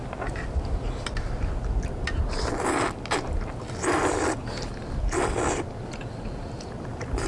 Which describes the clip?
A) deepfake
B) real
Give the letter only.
B